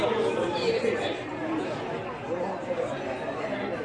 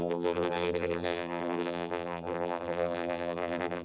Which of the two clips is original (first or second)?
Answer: first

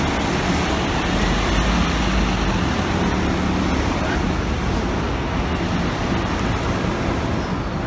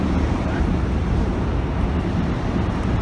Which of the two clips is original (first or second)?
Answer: first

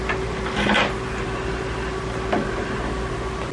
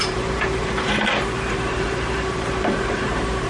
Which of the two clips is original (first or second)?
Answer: first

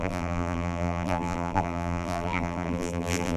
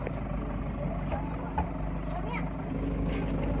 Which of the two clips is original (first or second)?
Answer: second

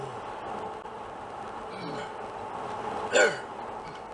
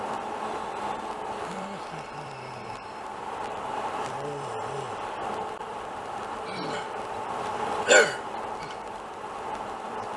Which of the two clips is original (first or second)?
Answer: first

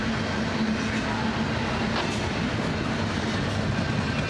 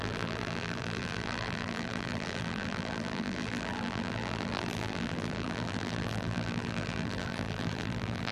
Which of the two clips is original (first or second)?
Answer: first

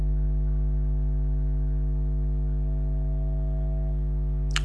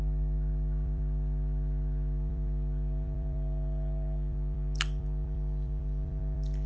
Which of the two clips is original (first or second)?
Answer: first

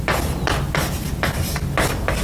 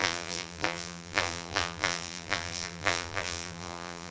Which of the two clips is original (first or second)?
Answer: first